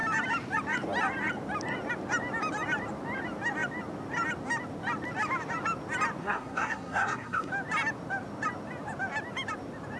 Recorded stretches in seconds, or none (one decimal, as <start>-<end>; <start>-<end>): 0.0-6.2; 7.5-10.0